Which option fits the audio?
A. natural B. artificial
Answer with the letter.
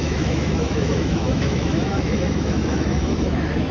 B